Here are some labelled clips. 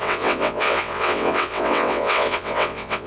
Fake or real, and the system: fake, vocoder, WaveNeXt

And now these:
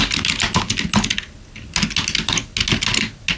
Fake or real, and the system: real